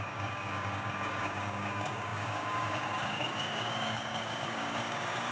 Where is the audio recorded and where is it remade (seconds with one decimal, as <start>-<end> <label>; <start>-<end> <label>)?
0.0-5.3 remade